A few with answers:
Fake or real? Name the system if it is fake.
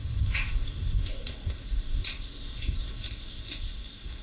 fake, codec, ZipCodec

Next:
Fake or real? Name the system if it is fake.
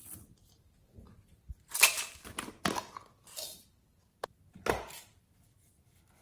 real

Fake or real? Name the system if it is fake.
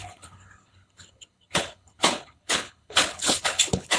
fake, codec, HILCodec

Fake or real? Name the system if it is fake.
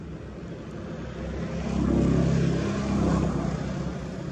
real